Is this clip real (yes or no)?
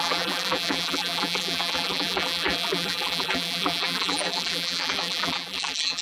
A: no